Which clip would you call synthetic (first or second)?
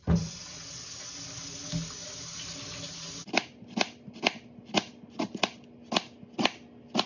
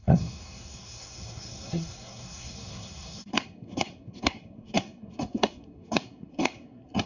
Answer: second